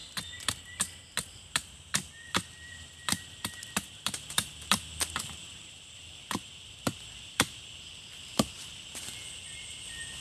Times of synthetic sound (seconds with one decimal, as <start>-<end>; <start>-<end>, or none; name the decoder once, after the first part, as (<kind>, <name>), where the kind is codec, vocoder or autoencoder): 0.6-10.2 (vocoder, BigVGAN v2)